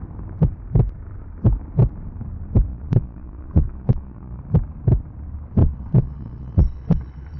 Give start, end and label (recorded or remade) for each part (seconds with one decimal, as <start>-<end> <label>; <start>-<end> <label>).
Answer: 0.0-2.7 recorded; 2.7-4.4 remade; 4.4-5.6 recorded; 5.6-7.4 remade